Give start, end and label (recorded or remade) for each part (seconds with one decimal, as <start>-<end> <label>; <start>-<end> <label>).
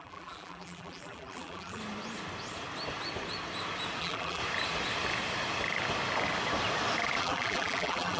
0.0-1.8 remade; 1.8-4.0 recorded; 4.0-4.4 remade; 4.4-7.2 recorded; 7.2-8.2 remade